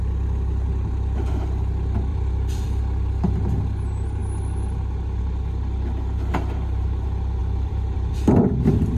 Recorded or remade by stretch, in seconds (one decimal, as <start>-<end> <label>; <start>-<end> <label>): 0.0-2.1 recorded; 2.1-2.8 remade; 2.8-7.4 recorded; 7.4-9.0 remade